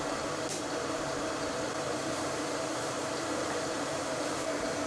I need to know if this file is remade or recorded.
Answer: remade